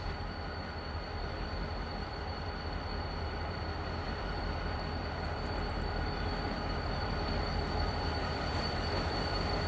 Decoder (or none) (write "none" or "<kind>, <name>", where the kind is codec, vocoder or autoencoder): vocoder, BigVGAN v2